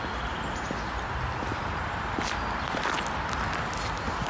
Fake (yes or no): no